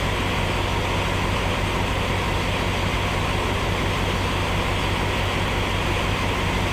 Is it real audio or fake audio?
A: real